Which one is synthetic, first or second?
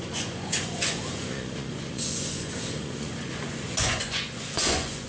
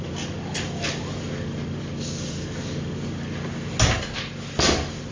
first